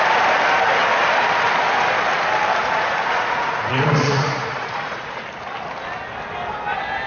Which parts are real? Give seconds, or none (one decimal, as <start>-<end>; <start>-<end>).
0.0-2.6; 5.2-7.1

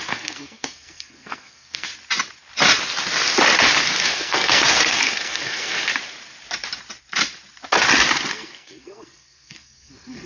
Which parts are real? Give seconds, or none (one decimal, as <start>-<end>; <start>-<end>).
1.9-4.0; 5.9-8.3

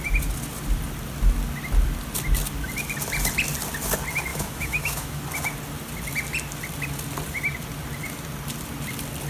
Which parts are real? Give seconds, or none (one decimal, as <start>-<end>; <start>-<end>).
0.0-4.3; 5.2-9.3

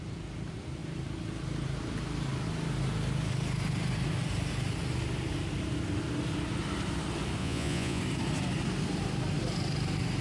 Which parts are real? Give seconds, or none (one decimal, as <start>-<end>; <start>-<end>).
0.0-7.4; 8.0-10.2

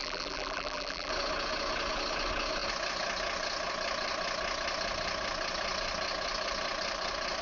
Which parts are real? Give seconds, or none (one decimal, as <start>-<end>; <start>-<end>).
1.1-7.4